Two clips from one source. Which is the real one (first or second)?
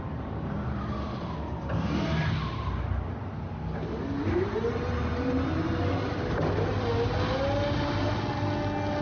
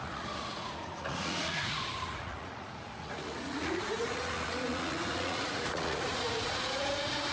first